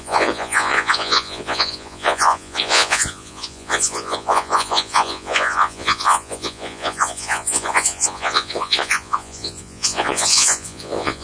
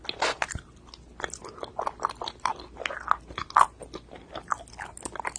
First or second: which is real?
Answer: second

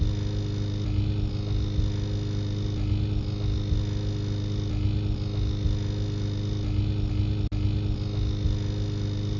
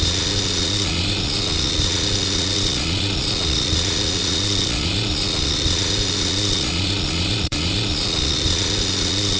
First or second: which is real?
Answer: first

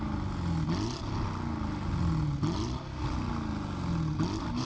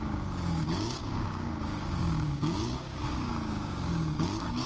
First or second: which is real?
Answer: first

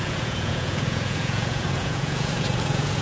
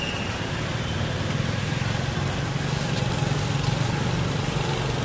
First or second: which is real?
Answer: second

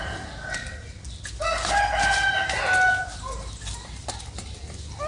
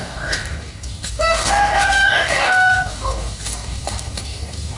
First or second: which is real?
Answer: first